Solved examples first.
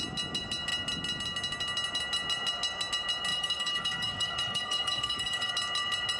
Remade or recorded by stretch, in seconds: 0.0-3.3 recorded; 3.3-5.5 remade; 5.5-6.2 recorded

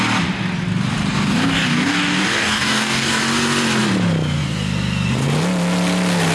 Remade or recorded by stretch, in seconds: 0.0-1.1 recorded; 1.1-3.2 remade; 3.2-6.3 recorded

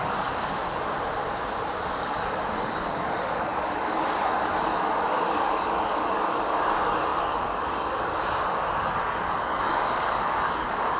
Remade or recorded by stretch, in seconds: 0.0-0.6 remade; 0.6-1.8 recorded; 1.8-11.0 remade

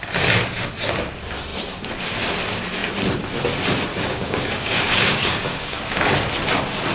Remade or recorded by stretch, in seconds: 0.0-3.9 recorded; 3.9-6.1 remade; 6.1-6.9 recorded

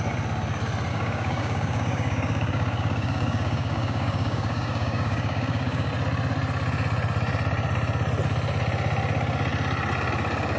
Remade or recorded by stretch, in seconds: 0.0-0.9 recorded; 0.9-5.9 remade; 5.9-10.6 recorded